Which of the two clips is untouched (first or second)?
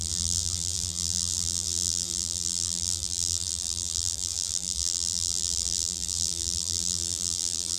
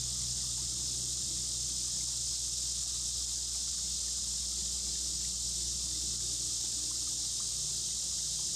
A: second